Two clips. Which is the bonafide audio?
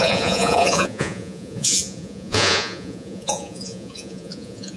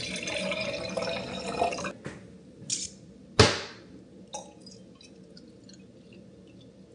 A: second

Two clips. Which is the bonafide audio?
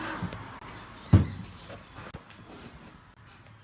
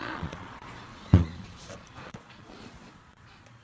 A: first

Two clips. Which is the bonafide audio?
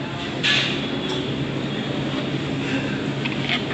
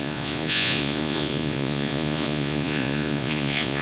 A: first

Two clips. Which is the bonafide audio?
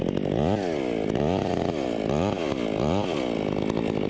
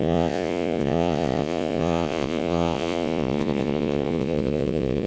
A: first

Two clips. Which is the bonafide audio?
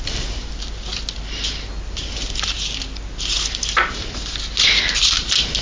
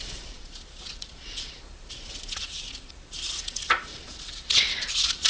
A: first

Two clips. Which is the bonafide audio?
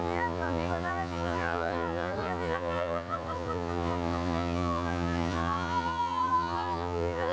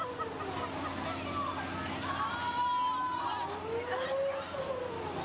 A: second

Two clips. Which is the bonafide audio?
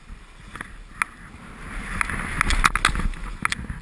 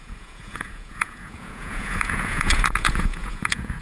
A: first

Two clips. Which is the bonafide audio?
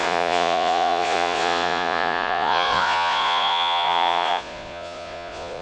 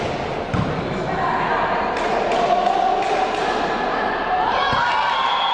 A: second